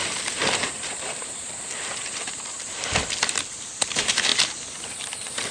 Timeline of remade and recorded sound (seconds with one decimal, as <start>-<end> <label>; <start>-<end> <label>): 0.0-4.3 remade; 4.3-4.8 recorded; 4.8-5.5 remade